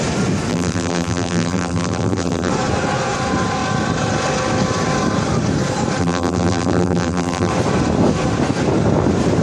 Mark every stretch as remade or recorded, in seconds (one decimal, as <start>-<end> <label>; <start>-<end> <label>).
0.0-0.5 recorded; 0.5-2.5 remade; 2.5-6.0 recorded; 6.0-7.5 remade; 7.5-9.4 recorded